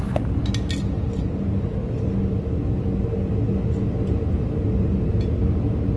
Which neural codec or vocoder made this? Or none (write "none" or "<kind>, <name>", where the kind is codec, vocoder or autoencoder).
none